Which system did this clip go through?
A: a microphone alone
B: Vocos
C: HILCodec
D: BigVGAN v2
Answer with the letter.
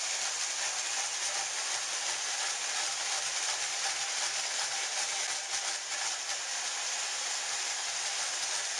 A